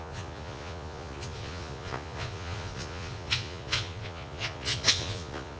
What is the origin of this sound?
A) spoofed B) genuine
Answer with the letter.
A